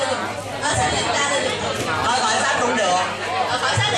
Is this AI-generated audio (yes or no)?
no